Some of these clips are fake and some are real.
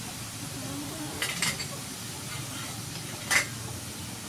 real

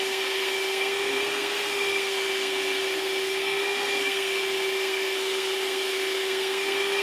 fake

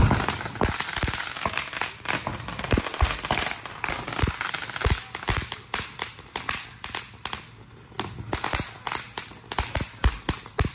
real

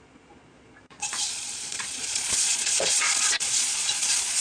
fake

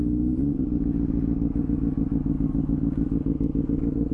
real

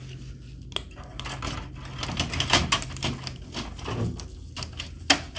real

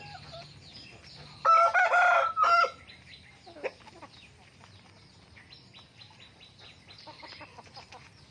real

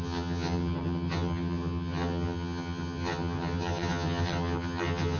fake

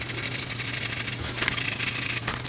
real